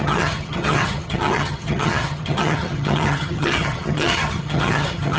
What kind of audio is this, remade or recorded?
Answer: remade